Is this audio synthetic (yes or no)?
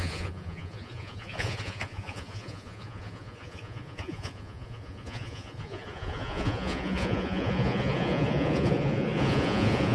yes